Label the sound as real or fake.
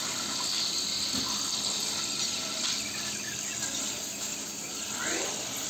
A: real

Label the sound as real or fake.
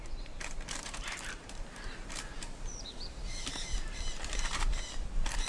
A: fake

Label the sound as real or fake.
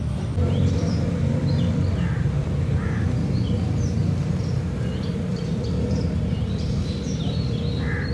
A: fake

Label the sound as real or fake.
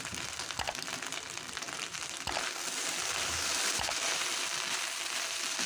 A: fake